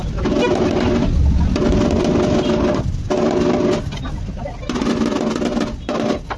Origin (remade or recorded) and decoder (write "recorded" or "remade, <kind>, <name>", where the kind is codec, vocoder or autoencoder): recorded